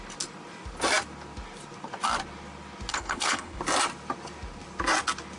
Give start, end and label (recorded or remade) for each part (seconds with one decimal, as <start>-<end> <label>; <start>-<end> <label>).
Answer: 0.0-2.9 recorded; 2.9-3.6 remade; 3.6-5.4 recorded

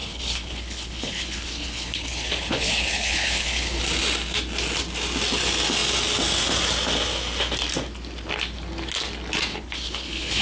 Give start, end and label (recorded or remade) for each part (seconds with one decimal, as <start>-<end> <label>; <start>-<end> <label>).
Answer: 0.0-3.8 remade; 3.8-9.5 recorded; 9.5-10.4 remade

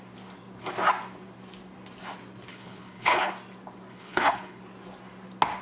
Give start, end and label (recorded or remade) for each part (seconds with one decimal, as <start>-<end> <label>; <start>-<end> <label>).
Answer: 0.0-2.5 recorded; 2.5-3.3 remade; 3.3-3.9 recorded; 3.9-4.6 remade; 4.6-5.6 recorded

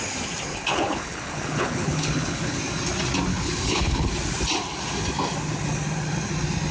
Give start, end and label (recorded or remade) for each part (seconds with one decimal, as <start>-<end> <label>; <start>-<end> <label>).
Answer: 0.0-0.5 recorded; 0.5-2.6 remade; 2.6-3.3 recorded; 3.3-4.1 remade; 4.1-6.7 recorded

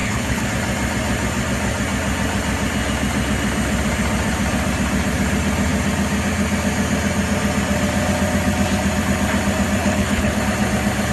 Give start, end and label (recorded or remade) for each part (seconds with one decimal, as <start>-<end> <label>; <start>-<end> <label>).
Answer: 0.0-0.5 remade; 0.5-9.8 recorded; 9.8-10.4 remade; 10.4-11.1 recorded

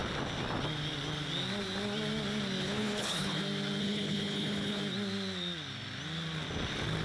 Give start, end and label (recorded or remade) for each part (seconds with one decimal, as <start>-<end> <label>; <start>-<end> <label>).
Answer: 0.0-2.6 recorded; 2.6-3.4 remade; 3.4-3.8 recorded; 3.8-4.8 remade; 4.8-7.0 recorded

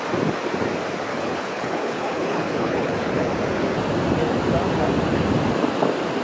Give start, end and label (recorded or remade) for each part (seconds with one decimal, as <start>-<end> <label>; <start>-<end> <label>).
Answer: 0.0-1.1 recorded; 1.1-3.3 remade; 3.3-6.2 recorded